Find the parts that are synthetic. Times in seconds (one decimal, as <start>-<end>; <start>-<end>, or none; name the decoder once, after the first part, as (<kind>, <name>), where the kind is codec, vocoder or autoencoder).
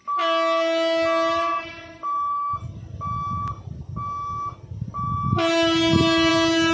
none